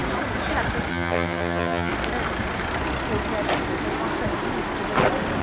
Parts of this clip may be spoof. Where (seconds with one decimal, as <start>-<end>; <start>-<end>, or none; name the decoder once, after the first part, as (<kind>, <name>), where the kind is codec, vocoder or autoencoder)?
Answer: 0.9-1.9 (vocoder, HiFi-GAN)

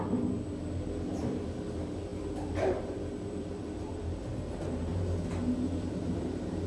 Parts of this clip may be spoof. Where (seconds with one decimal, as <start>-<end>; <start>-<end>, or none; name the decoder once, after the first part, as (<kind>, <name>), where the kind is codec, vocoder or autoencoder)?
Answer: 0.0-4.9 (vocoder, BigVGAN v2); 5.9-6.7

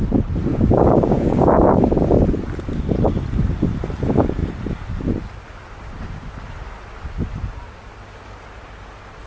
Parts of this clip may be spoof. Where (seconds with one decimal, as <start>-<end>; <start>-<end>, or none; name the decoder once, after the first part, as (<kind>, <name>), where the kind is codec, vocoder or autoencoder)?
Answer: 0.5-1.4 (codec, DAC)